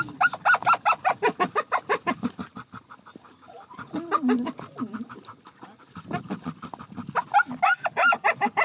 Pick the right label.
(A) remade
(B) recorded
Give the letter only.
B